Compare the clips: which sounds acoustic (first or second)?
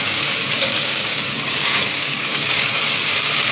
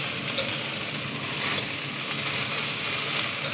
second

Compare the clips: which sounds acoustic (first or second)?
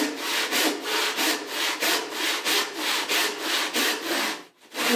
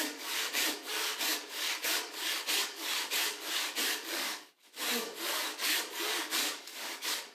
first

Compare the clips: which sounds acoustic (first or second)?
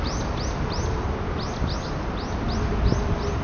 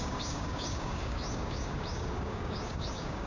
first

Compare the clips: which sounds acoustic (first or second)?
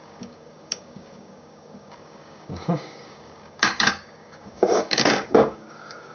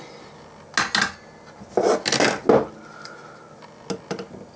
second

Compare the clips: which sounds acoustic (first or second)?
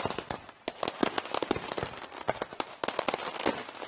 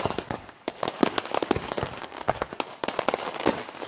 first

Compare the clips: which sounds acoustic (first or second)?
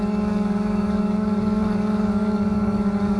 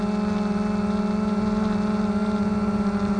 second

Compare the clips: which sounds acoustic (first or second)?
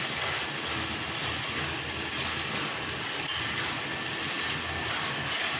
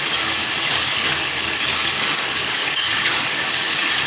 first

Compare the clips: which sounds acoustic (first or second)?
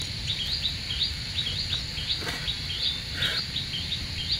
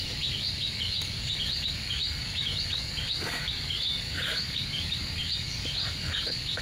first